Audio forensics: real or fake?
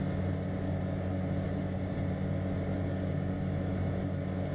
real